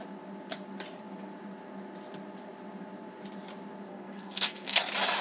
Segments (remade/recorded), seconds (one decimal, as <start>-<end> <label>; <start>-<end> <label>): 0.0-3.9 recorded; 3.9-4.8 remade; 4.8-5.2 recorded